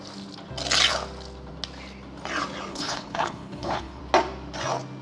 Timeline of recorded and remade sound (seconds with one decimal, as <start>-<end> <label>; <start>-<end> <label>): 0.0-2.7 recorded; 2.7-4.0 remade; 4.0-5.0 recorded